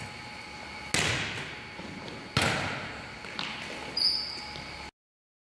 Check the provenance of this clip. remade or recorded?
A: recorded